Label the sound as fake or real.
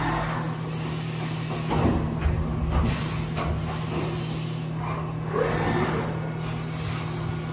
real